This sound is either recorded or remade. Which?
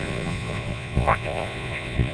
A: remade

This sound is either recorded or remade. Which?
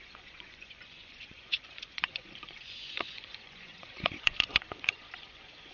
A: remade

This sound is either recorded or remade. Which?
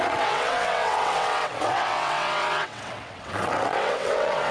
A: remade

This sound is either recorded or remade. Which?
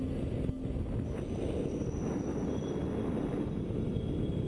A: recorded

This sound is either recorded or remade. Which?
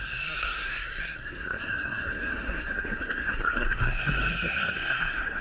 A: remade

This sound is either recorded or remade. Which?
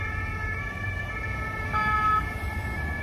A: recorded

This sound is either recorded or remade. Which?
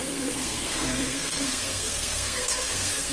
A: remade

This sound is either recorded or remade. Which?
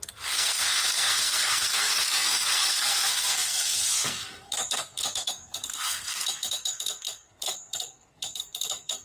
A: remade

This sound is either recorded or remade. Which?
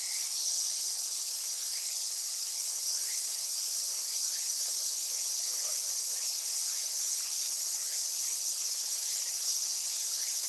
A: remade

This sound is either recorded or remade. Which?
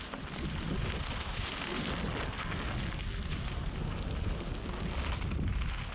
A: recorded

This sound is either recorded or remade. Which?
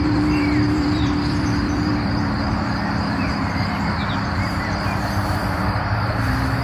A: remade